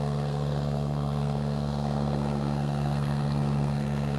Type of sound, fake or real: fake